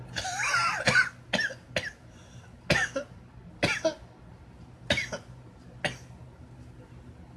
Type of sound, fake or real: real